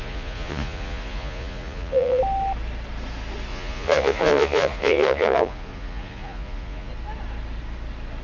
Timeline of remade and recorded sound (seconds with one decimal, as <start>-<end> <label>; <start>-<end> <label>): 0.0-2.2 remade; 2.2-3.5 recorded; 3.5-6.9 remade; 6.9-8.2 recorded